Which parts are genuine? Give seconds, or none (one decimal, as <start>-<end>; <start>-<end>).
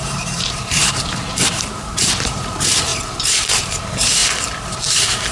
4.2-5.3